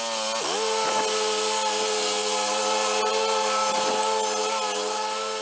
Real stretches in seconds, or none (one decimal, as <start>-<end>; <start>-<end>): 0.0-5.4